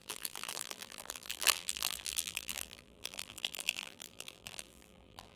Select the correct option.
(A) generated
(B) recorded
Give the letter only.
A